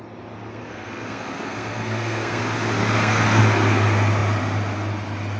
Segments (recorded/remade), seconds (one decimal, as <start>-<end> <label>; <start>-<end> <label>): 0.0-0.5 recorded; 0.5-2.4 remade; 2.4-2.8 recorded; 2.8-3.4 remade; 3.4-5.4 recorded